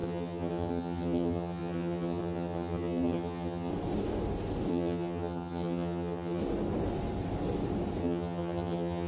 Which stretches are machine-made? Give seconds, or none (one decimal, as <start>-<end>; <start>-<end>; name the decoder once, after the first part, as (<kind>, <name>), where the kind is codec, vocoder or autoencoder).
0.0-3.7 (vocoder, HiFi-GAN); 4.7-6.4; 8.0-9.1